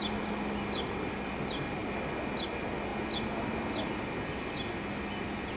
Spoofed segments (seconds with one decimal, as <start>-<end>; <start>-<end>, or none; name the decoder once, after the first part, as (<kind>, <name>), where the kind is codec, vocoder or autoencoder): none